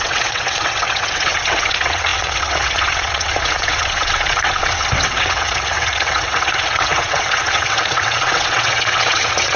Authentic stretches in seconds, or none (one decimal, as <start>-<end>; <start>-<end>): none